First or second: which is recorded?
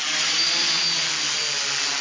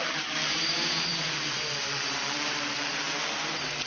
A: first